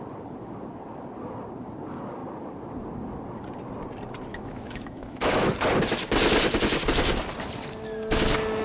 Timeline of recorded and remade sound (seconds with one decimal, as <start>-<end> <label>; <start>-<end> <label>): 0.0-4.3 recorded; 4.3-5.5 remade; 5.5-8.6 recorded